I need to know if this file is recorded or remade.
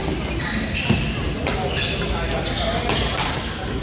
recorded